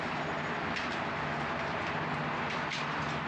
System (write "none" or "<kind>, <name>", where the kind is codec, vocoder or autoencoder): none